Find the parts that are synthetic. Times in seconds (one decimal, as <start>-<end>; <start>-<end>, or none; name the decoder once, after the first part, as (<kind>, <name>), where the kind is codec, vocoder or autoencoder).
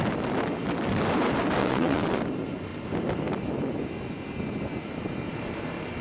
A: 1.6-2.2 (vocoder, WaveNeXt)